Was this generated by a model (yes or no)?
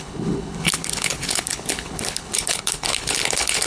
yes